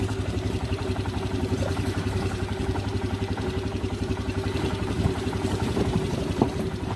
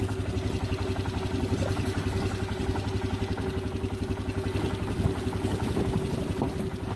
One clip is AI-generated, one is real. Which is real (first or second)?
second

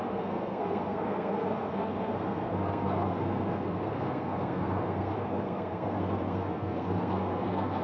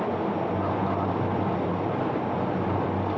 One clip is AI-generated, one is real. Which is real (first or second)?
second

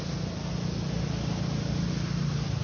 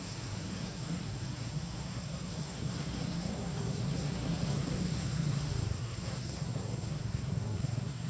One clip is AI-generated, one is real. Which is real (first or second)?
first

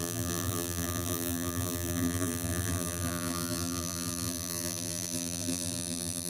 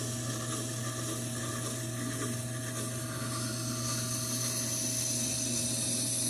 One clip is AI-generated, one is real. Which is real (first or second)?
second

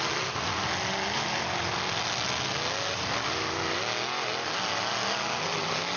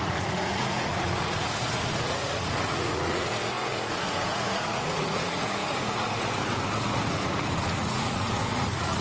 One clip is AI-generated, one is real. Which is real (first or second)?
first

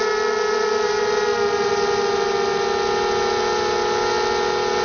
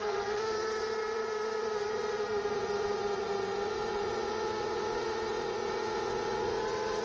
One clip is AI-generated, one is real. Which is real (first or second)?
first